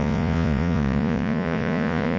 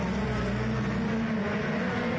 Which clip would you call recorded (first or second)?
second